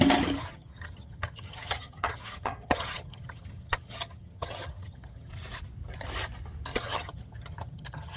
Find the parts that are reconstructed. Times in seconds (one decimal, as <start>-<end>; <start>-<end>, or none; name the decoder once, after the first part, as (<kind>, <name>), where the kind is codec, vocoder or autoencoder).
0.4-5.3 (vocoder, HiFi-GAN); 6.7-8.2